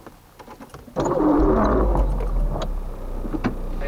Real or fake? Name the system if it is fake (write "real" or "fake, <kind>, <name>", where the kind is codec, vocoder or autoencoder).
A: real